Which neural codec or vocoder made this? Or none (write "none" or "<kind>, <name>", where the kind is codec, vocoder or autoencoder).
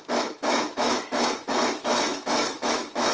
autoencoder, DAC-VAE